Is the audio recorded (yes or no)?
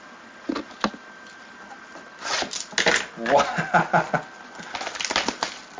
yes